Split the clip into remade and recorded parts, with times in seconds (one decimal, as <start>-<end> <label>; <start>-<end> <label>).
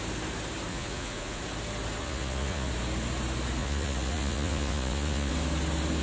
0.0-0.7 recorded; 0.7-1.4 remade; 1.4-2.0 recorded; 2.0-2.7 remade; 2.7-3.6 recorded; 3.6-5.3 remade; 5.3-6.0 recorded